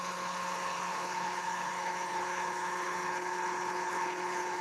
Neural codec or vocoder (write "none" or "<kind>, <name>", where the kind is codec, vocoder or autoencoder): codec, HILCodec